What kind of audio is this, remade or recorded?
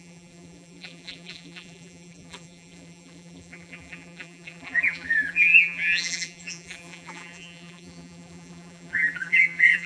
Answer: remade